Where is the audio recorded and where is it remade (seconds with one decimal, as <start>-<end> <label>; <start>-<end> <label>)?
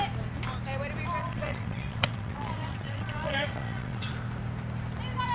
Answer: 0.0-1.2 recorded; 1.2-4.1 remade; 4.1-5.3 recorded